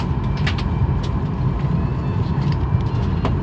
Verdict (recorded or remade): recorded